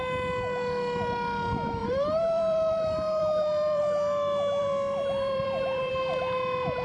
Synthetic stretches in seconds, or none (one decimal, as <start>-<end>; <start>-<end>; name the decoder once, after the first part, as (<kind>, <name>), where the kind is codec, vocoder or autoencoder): 1.8-3.8 (vocoder, BigVGAN v2); 4.6-5.9